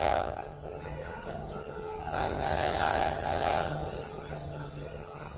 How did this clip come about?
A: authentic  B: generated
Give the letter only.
B